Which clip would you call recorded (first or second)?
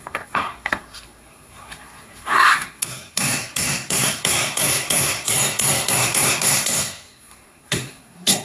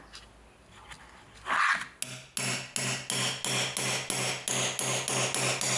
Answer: second